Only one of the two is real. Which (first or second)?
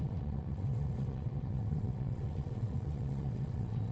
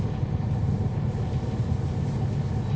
second